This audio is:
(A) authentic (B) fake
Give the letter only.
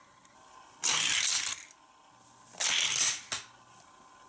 A